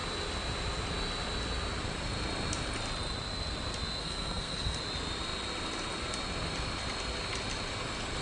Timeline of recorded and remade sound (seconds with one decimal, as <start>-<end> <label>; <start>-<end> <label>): 0.0-4.0 recorded; 4.0-4.8 remade; 4.8-8.2 recorded